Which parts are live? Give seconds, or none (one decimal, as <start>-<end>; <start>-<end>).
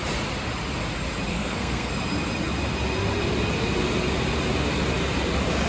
0.0-1.3; 1.9-5.7